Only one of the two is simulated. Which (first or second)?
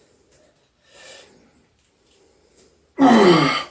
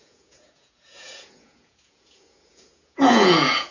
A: second